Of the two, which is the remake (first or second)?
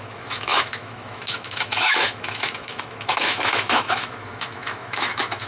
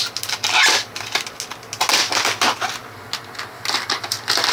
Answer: first